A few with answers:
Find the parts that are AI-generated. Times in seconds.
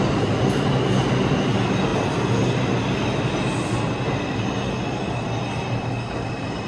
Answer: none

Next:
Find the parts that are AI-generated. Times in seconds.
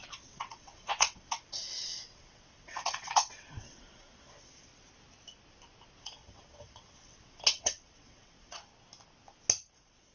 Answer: 0.0-4.7; 6.0-8.7; 9.7-10.1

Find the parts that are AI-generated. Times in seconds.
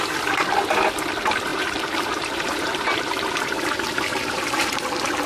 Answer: 1.5-4.7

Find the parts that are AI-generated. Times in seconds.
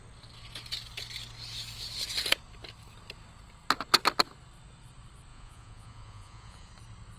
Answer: 5.3-6.7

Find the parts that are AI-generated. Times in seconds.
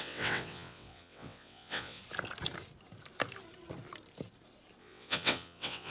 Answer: 0.0-2.0; 4.8-5.9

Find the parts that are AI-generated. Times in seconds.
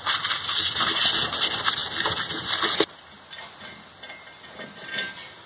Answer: none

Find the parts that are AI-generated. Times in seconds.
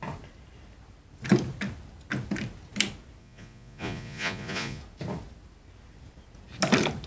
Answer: 3.2-4.8